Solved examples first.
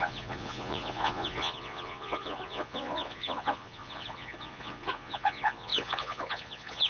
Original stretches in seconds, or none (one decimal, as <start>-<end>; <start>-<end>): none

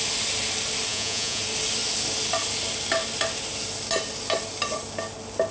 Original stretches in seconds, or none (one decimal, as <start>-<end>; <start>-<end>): 0.0-0.9; 1.4-5.5

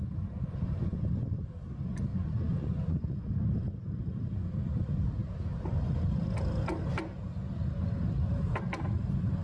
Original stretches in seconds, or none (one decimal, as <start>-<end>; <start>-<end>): 0.0-2.1; 3.2-9.4

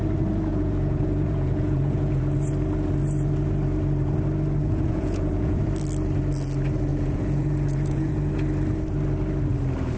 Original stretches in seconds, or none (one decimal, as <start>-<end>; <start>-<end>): 0.0-0.5; 2.2-4.6; 5.6-6.9; 8.3-10.0

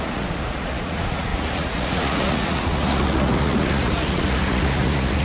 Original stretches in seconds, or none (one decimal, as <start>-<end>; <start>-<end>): none

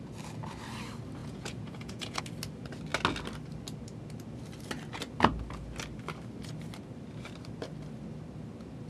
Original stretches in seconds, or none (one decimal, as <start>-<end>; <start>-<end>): 0.0-1.2; 2.2-8.9

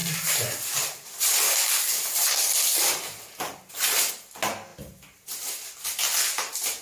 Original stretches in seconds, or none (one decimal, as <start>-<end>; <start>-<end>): 0.0-6.8

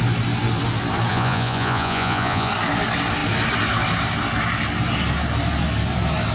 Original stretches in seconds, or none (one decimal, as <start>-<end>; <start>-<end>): 0.0-1.1; 2.5-6.3